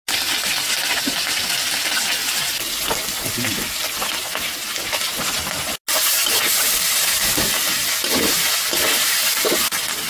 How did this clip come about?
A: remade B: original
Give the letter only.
B